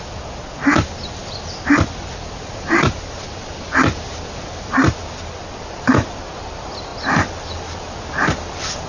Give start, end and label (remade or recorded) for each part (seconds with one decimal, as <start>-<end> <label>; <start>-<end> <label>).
0.0-8.9 recorded